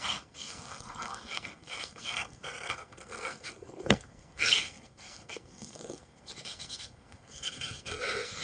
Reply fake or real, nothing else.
fake